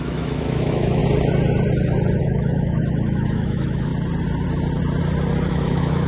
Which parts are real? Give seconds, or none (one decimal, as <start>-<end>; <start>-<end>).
1.0-2.2; 3.9-5.5